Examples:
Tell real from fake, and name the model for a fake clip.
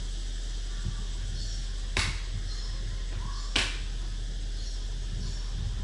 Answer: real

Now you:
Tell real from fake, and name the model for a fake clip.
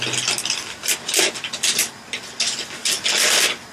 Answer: real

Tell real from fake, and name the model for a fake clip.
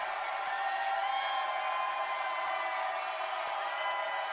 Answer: real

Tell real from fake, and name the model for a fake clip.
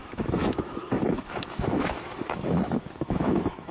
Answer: fake, autoencoder, DAC-VAE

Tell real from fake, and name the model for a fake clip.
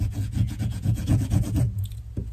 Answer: fake, vocoder, Vocos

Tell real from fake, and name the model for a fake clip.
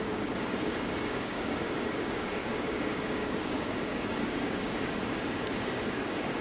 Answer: fake, codec, DAC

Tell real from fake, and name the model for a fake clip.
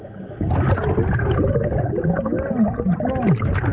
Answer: real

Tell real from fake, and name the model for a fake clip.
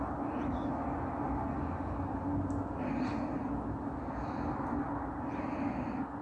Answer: real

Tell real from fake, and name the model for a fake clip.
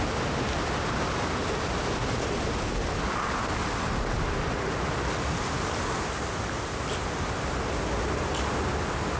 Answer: real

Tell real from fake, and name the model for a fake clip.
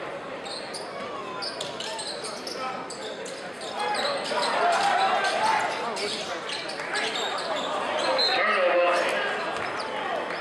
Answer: real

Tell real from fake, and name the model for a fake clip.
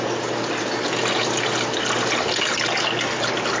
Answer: real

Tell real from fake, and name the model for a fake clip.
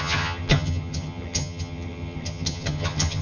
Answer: fake, vocoder, HiFi-GAN